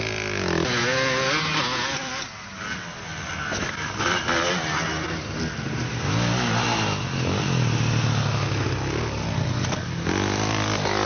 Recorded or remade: recorded